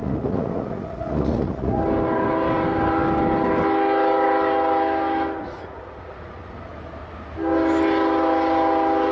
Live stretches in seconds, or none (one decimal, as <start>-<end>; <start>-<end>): 1.8-5.4; 6.7-9.1

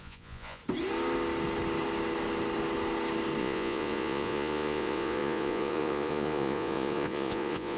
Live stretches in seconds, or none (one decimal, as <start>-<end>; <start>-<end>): 0.6-3.4

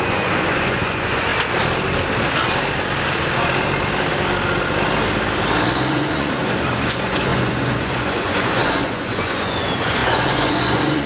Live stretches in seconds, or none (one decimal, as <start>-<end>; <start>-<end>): 1.3-5.9

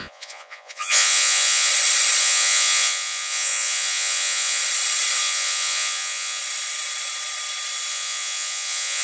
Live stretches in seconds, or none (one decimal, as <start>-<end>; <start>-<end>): 1.7-2.2; 4.6-5.2; 6.4-7.9

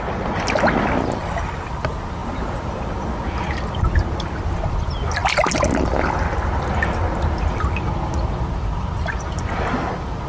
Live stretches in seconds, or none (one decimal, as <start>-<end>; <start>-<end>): 0.0-10.3

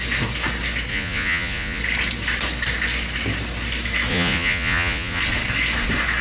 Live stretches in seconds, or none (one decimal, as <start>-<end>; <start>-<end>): 0.0-0.9; 1.8-4.1; 5.2-6.2

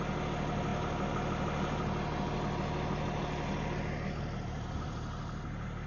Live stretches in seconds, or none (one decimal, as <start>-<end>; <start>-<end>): 0.0-5.9

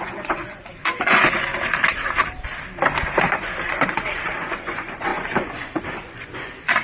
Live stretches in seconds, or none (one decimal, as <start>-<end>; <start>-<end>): 1.5-3.3